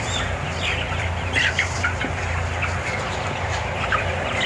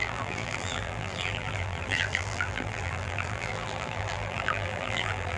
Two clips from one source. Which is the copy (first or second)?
second